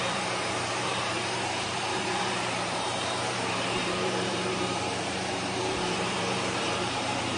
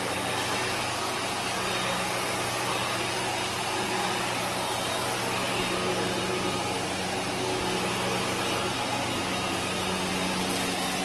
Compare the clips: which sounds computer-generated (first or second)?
first